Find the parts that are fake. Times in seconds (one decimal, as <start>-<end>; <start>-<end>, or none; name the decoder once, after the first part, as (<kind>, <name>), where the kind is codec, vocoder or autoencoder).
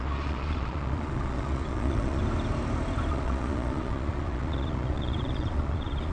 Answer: 0.0-2.2 (vocoder, Vocos); 3.1-6.1